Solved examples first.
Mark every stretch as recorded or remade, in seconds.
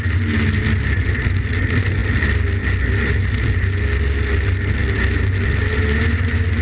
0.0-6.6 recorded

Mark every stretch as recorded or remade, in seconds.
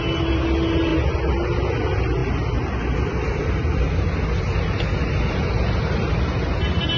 0.0-7.0 recorded